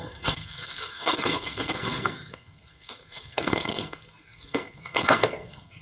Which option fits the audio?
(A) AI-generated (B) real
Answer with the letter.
A